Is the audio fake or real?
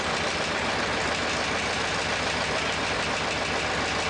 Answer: real